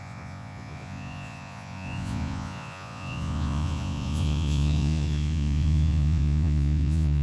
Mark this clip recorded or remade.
remade